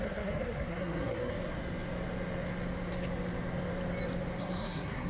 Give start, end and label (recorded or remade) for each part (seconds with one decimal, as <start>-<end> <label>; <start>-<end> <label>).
0.0-1.3 remade; 1.3-4.4 recorded; 4.4-5.1 remade

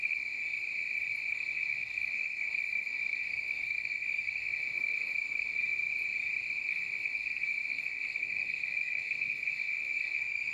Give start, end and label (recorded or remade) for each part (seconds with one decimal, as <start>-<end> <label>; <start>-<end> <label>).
0.0-0.4 remade; 0.4-1.3 recorded; 1.3-5.9 remade; 5.9-6.6 recorded; 6.6-10.5 remade